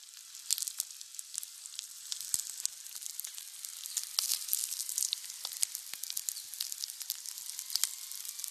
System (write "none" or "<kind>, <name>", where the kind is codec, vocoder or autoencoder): none